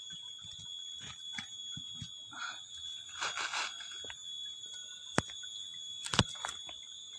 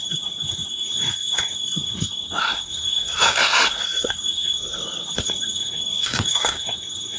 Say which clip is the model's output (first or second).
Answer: second